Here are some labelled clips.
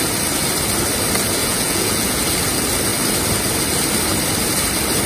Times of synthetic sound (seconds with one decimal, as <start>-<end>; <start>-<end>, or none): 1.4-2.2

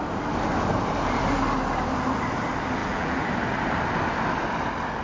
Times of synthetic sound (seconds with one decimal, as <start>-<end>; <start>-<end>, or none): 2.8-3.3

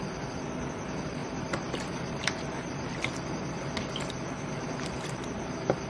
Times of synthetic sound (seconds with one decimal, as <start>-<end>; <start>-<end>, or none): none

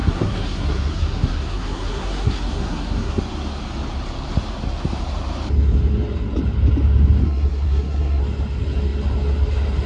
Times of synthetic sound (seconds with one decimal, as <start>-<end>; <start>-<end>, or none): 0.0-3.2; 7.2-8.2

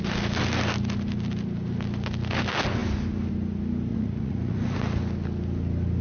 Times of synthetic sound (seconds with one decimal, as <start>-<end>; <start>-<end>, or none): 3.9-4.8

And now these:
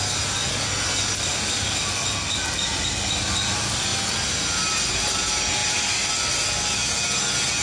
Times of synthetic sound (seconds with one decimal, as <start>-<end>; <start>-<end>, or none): 5.6-6.1